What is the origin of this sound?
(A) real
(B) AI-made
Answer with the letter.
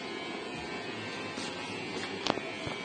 A